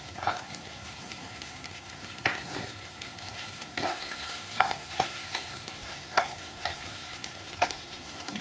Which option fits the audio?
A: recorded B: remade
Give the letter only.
B